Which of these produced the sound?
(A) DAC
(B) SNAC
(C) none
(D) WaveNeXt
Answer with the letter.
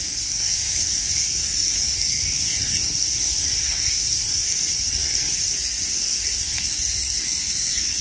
B